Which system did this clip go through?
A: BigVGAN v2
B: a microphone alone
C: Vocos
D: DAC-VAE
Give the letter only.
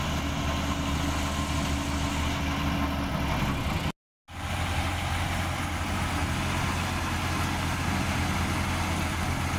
B